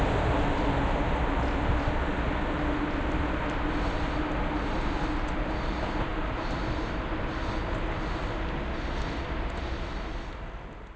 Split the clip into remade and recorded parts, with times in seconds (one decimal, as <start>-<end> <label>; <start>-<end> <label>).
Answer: 0.0-11.0 recorded